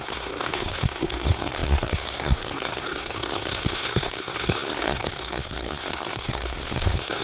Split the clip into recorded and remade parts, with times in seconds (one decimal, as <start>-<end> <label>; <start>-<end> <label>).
0.0-7.2 remade

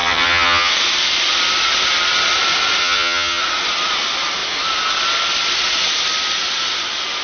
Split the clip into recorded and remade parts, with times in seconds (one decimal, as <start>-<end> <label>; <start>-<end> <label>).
0.0-0.7 remade; 0.7-2.8 recorded; 2.8-3.4 remade; 3.4-7.2 recorded